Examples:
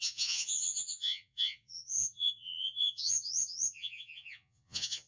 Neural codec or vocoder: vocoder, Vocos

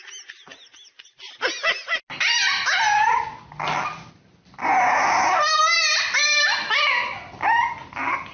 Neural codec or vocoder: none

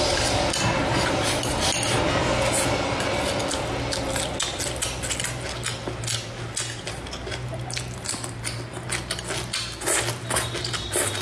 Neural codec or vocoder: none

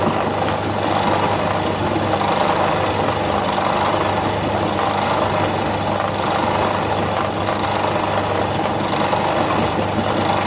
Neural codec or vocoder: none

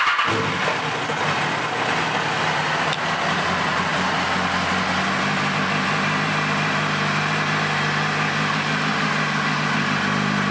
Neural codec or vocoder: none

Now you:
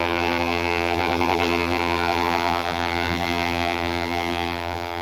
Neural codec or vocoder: vocoder, BigVGAN v2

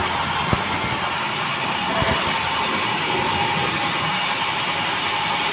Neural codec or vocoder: none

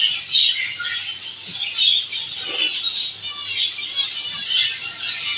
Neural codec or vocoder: none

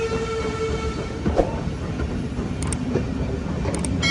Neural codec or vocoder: vocoder, BigVGAN v2